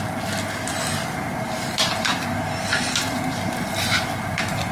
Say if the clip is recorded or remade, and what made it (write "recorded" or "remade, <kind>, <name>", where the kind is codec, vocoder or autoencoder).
recorded